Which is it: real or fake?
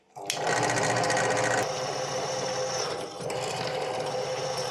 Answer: real